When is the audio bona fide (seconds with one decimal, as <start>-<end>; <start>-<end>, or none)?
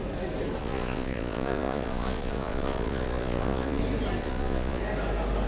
0.0-0.6; 3.8-4.2; 4.8-5.5